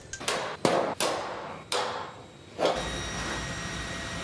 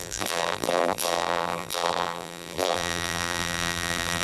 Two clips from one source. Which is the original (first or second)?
first